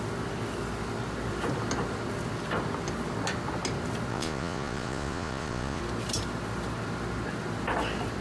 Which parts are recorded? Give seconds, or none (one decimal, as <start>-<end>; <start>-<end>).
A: 0.0-4.1; 5.8-8.2